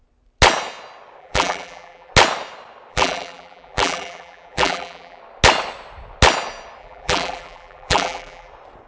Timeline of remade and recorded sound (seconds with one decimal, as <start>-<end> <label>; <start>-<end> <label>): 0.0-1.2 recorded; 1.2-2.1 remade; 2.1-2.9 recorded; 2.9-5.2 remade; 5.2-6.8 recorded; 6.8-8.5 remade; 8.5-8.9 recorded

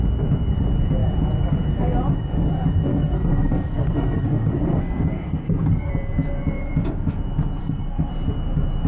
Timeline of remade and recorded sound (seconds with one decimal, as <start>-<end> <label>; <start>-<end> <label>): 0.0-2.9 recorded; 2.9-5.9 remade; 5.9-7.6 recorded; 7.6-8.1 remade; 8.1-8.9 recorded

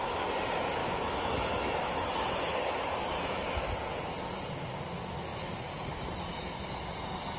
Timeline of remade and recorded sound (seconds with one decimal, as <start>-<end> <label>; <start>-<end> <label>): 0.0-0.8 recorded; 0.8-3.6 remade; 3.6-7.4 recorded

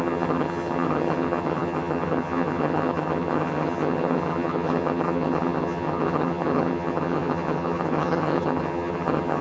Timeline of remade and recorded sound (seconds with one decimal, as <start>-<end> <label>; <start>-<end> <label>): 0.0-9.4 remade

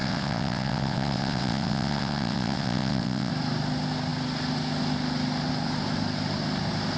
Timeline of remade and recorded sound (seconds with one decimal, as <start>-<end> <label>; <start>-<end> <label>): 0.0-3.3 remade; 3.3-7.0 recorded